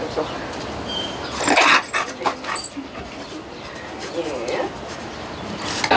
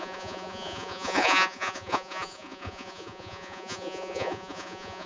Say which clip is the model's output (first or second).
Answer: second